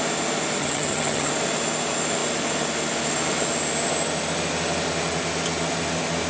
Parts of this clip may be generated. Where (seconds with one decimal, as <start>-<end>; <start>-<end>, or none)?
0.6-1.3